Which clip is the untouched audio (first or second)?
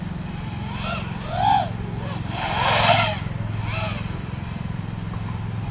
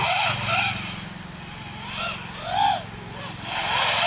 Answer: second